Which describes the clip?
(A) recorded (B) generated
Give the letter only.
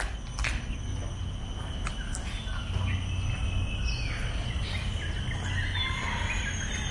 A